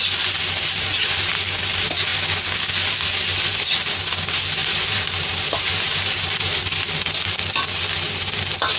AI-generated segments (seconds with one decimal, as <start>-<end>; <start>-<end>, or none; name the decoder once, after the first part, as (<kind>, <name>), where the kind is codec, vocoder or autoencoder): 4.6-6.6 (vocoder, BigVGAN v2)